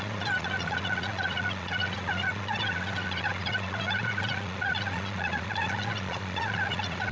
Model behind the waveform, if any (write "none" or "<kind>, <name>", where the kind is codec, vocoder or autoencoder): vocoder, Vocos